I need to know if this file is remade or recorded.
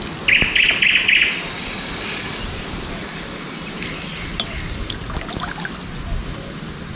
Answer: recorded